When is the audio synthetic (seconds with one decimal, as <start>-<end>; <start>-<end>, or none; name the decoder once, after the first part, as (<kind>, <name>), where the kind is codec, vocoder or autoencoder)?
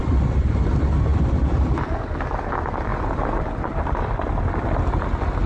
2.9-4.0 (vocoder, BigVGAN v2)